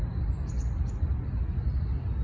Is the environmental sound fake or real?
real